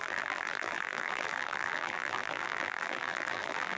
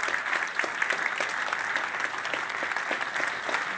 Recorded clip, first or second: second